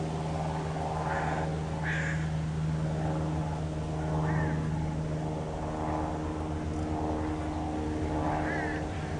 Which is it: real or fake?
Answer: real